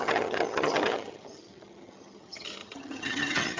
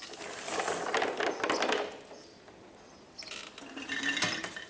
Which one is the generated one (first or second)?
first